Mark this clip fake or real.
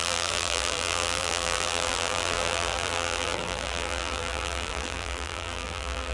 fake